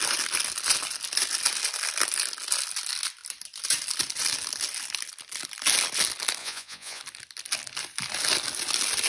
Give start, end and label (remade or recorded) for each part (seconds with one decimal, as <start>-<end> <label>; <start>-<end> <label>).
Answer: 0.0-6.4 recorded; 6.4-7.0 remade; 7.0-9.1 recorded

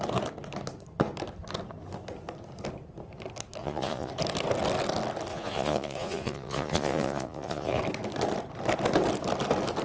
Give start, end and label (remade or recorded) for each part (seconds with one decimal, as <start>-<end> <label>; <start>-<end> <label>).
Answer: 0.0-3.6 recorded; 3.6-4.1 remade; 4.1-5.3 recorded; 5.3-7.8 remade; 7.8-9.8 recorded

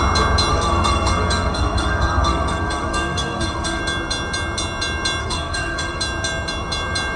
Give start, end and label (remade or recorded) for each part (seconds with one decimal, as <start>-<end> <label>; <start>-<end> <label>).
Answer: 0.0-0.5 recorded; 0.5-3.8 remade; 3.8-5.2 recorded; 5.2-6.0 remade; 6.0-7.2 recorded

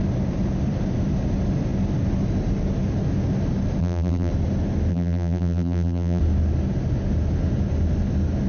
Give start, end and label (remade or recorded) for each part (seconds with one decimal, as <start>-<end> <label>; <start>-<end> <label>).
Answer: 0.0-3.8 recorded; 3.8-4.3 remade; 4.3-4.9 recorded; 4.9-6.2 remade; 6.2-8.5 recorded

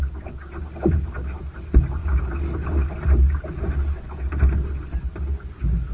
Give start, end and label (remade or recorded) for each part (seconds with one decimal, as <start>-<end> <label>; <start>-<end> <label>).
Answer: 0.0-5.9 recorded

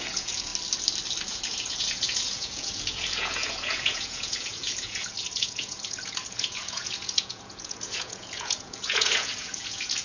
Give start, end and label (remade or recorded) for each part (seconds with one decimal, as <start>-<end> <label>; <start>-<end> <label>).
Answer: 0.0-0.5 remade; 0.5-1.3 recorded; 1.3-10.0 remade

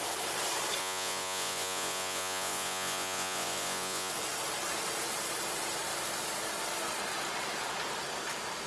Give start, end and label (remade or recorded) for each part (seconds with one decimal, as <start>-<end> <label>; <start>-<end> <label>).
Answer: 0.0-0.8 recorded; 0.8-4.1 remade; 4.1-8.7 recorded